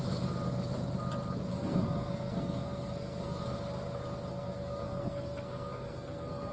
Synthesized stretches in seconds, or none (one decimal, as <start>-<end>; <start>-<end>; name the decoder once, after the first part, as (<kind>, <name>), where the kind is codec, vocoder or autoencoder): 1.5-3.4 (codec, SNAC); 4.3-6.5